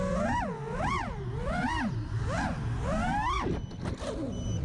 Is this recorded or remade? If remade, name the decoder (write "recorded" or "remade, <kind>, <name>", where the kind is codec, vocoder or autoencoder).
recorded